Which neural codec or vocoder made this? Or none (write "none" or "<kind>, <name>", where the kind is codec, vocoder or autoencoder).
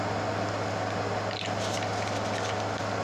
none